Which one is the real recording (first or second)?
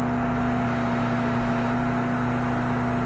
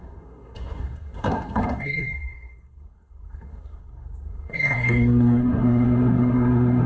first